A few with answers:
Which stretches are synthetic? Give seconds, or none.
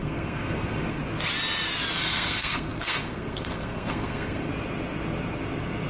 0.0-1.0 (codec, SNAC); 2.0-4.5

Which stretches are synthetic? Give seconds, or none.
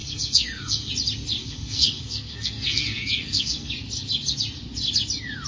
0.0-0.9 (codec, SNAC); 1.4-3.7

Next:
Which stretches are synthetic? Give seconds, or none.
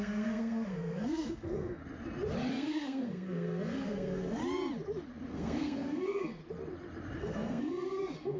0.0-1.8 (codec, SNAC); 2.5-4.4; 5.3-6.4; 7.2-8.4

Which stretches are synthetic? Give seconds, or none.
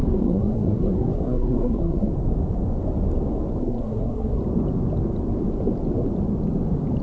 0.0-2.1 (codec, SNAC); 3.6-4.4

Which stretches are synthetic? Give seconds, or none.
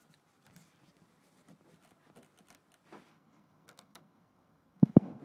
3.1-5.2 (codec, SNAC)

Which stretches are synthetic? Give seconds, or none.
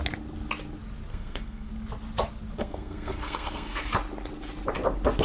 1.1-1.7 (codec, SNAC); 2.6-3.8